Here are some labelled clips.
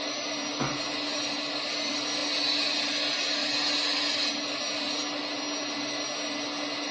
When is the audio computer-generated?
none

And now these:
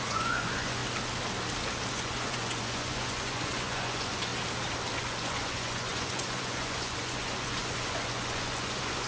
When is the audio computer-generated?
0.0-0.8 (vocoder, Vocos); 1.9-4.3; 5.0-9.1

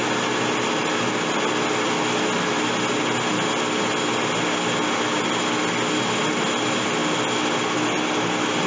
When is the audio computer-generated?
none

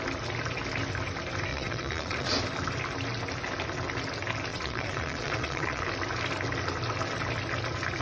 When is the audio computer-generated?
1.5-2.3 (vocoder, Vocos); 4.5-5.8

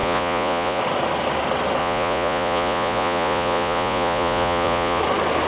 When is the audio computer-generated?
0.0-0.8 (vocoder, Vocos); 1.8-5.0

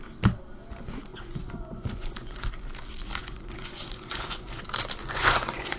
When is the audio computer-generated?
1.1-2.5 (vocoder, Vocos); 3.2-4.6; 5.0-5.8

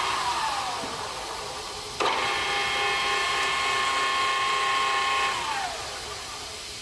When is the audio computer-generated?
none

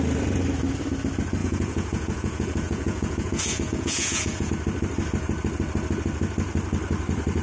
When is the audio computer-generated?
1.4-4.5 (vocoder, Vocos)